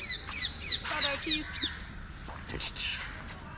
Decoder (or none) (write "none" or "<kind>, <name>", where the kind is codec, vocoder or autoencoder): none